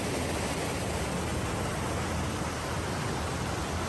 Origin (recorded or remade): recorded